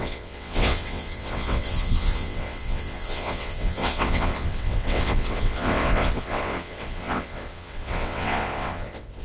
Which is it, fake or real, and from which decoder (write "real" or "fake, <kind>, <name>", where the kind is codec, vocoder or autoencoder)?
fake, vocoder, WaveNeXt